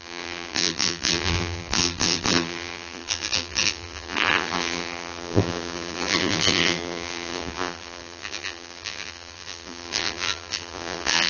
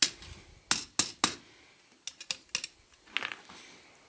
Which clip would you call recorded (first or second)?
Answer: second